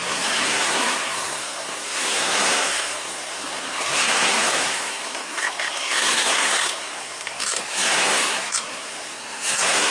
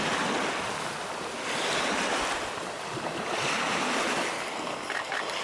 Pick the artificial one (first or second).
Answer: first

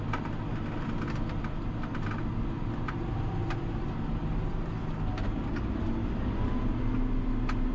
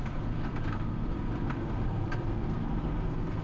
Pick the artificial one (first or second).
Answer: second